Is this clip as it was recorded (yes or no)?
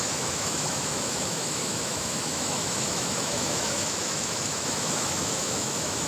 no